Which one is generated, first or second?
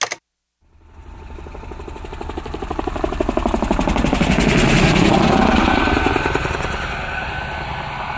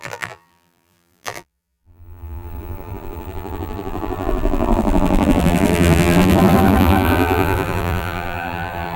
second